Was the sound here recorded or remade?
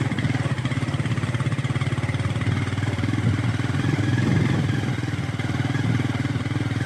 recorded